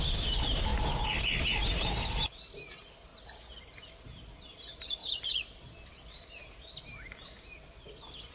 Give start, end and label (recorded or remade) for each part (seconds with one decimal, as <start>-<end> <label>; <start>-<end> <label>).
0.0-3.1 remade; 3.1-3.6 recorded; 3.6-8.3 remade